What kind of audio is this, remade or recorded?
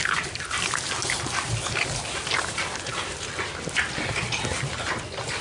recorded